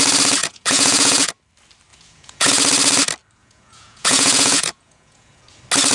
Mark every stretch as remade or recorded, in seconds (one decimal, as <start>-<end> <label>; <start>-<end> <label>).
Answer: 0.0-0.4 recorded; 0.4-1.3 remade; 1.3-1.9 recorded; 1.9-2.5 remade; 2.5-3.4 recorded; 3.4-5.4 remade; 5.4-5.9 recorded